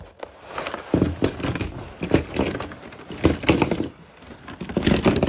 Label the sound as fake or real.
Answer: real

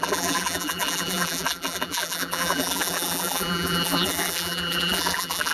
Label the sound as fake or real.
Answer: fake